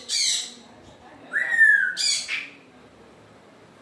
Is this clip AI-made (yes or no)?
no